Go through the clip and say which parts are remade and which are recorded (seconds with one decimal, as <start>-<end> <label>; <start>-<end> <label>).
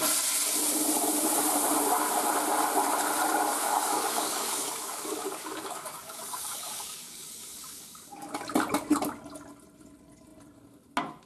0.0-3.5 recorded; 3.5-8.4 remade; 8.4-11.3 recorded